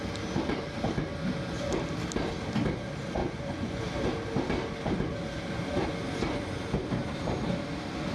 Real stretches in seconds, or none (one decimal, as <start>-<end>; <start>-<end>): 0.0-3.2; 3.8-8.1